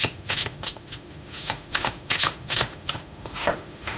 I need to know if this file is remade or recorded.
remade